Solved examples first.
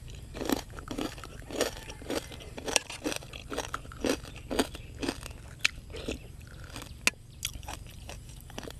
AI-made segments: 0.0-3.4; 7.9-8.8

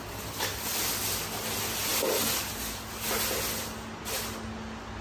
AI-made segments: none